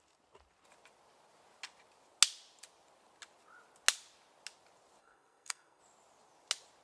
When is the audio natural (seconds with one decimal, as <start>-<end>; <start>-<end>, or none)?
0.0-5.0; 5.8-6.8